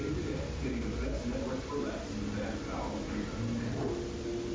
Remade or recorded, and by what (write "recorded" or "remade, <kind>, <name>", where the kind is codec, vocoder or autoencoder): recorded